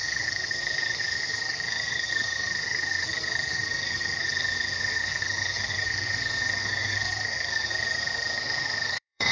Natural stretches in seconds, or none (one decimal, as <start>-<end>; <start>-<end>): none